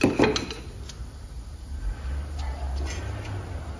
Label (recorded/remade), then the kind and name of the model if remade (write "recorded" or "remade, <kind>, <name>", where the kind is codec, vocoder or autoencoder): recorded